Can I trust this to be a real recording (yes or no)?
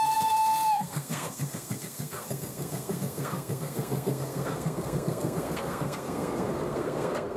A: no